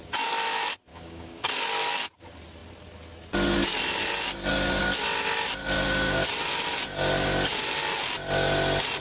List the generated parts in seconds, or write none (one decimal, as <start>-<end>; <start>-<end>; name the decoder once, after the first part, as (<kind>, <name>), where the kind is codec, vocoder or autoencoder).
0.9-1.5 (codec, DAC)